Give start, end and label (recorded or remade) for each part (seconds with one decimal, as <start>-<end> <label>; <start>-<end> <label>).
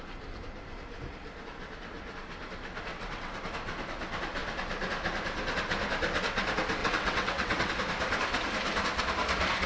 0.0-2.9 recorded; 2.9-3.4 remade; 3.4-6.8 recorded; 6.8-7.7 remade; 7.7-9.7 recorded